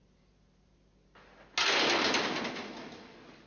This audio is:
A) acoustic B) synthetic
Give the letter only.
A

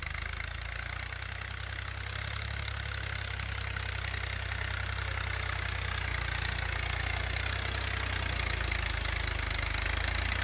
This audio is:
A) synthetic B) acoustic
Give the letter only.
B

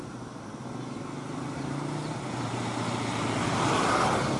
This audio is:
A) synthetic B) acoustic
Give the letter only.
B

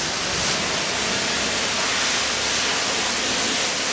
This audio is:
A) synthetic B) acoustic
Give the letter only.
B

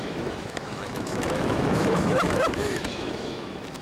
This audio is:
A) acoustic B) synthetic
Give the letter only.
B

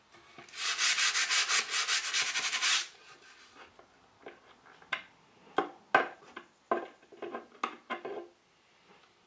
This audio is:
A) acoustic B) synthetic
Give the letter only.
A